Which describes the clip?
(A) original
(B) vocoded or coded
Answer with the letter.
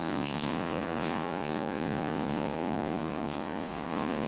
B